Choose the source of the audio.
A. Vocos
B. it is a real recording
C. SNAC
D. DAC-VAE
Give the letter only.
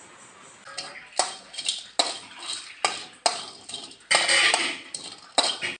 B